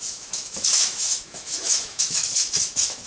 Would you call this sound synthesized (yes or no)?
yes